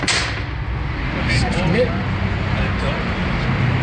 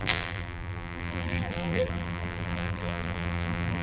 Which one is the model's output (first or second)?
second